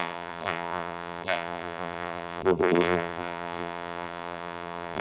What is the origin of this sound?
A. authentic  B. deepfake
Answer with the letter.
B